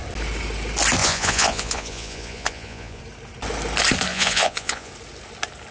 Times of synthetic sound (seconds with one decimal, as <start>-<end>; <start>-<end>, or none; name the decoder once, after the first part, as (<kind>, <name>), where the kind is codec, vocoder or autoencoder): 1.0-3.0 (vocoder, Vocos); 4.1-4.9